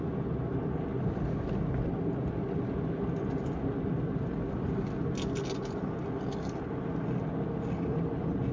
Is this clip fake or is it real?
real